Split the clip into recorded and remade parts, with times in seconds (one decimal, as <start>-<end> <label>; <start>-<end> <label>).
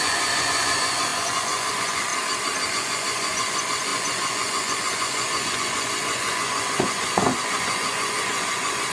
0.0-2.1 remade; 2.1-2.7 recorded; 2.7-8.9 remade